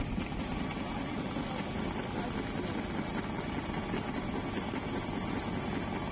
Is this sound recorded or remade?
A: recorded